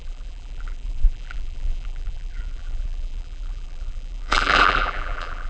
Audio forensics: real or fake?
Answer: fake